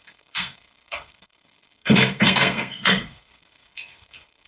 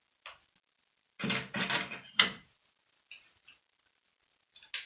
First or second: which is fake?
first